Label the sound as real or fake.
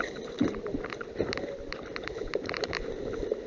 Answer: fake